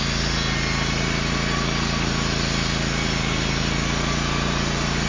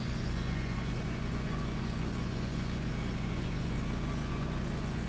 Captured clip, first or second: first